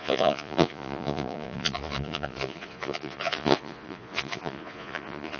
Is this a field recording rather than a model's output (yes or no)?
no